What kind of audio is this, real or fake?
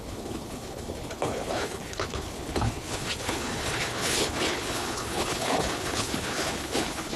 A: fake